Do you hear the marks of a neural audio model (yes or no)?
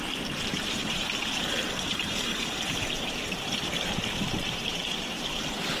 yes